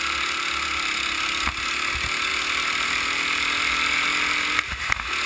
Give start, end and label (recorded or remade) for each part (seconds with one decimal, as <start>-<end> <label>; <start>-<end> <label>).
0.0-5.3 recorded